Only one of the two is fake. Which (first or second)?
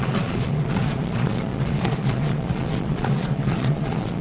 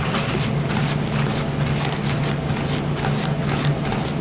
first